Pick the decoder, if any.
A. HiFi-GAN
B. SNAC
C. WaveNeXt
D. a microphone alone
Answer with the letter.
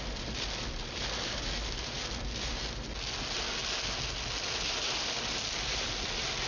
D